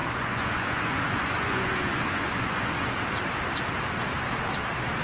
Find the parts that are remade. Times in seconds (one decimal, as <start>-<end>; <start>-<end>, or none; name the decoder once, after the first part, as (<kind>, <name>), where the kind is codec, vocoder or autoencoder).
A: 0.0-3.0 (vocoder, Vocos)